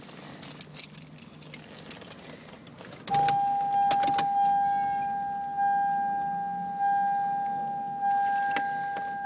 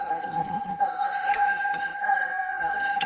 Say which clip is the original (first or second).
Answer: first